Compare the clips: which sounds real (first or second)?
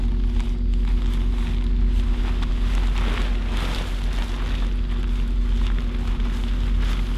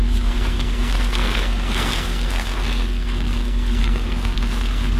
first